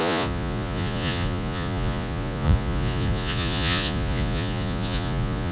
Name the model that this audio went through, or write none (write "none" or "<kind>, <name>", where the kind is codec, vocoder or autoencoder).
vocoder, Vocos